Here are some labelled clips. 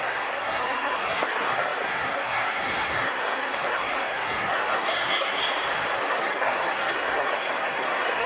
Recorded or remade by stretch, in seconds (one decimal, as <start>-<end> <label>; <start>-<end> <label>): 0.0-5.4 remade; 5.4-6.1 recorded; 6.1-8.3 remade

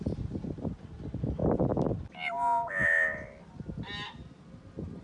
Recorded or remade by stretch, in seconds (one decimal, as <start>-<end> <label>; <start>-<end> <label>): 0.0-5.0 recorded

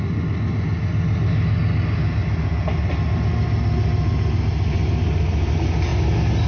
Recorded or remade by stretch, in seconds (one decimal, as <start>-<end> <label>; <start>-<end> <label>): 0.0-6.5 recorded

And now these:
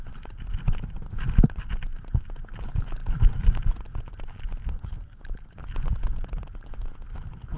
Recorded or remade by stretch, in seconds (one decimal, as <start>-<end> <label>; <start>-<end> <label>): 0.0-7.6 recorded

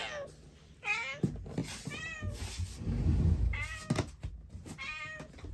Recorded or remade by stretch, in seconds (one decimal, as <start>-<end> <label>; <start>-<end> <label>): 0.0-5.5 recorded

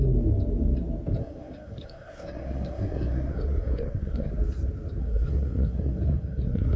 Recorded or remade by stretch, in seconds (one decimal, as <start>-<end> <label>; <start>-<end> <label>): 0.0-1.2 recorded; 1.2-4.3 remade; 4.3-5.0 recorded; 5.0-6.8 remade

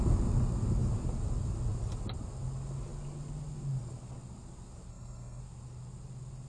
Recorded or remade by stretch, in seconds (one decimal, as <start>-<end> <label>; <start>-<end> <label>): 0.0-4.9 recorded; 4.9-5.4 remade; 5.4-6.5 recorded

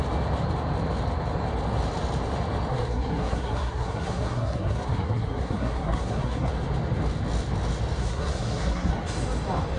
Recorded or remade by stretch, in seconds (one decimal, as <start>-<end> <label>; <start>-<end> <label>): 0.0-2.7 recorded; 2.7-6.5 remade; 6.5-8.0 recorded; 8.0-8.9 remade; 8.9-9.8 recorded